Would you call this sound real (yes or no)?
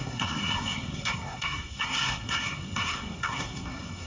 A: no